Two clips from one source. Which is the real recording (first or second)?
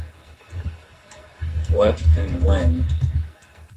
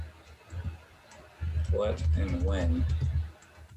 second